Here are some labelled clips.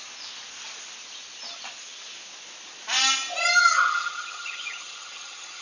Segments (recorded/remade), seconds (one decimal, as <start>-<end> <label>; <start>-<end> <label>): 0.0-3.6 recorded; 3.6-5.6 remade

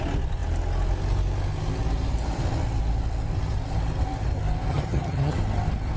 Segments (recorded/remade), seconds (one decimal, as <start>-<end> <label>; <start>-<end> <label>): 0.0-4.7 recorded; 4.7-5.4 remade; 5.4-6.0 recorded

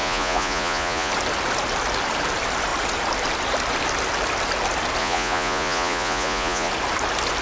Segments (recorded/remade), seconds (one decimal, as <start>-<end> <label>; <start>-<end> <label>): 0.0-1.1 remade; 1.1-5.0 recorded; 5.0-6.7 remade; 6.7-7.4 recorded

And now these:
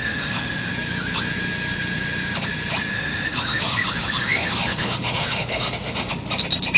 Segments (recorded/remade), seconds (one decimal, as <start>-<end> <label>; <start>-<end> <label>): 0.0-0.7 remade; 0.7-2.9 recorded; 2.9-6.1 remade; 6.1-6.8 recorded

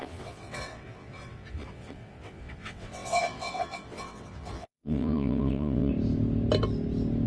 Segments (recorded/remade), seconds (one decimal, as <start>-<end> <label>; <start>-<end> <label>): 0.0-5.9 remade; 5.9-7.3 recorded